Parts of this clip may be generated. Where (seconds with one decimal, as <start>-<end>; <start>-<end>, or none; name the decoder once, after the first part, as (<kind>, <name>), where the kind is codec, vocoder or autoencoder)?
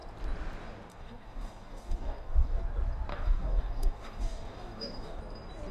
0.9-2.6 (codec, DAC); 3.1-5.2